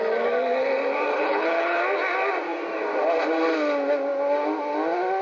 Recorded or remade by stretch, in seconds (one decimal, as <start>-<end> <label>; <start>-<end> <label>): 0.0-1.1 recorded; 1.1-1.8 remade; 1.8-5.2 recorded